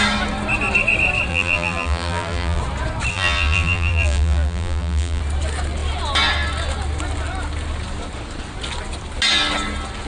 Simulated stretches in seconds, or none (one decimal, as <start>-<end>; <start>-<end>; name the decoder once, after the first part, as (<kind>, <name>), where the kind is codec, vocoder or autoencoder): 1.3-2.6 (vocoder, BigVGAN v2); 3.1-5.2